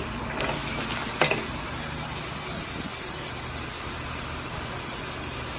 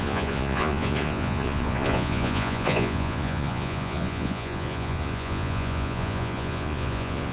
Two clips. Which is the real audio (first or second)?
first